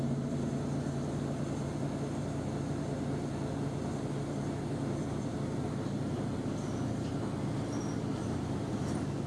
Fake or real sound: real